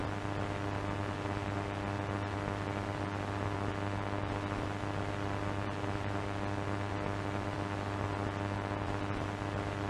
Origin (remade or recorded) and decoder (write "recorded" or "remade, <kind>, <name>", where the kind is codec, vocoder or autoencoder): recorded